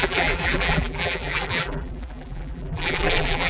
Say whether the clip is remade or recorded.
remade